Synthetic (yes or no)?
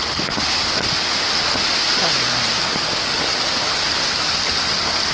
no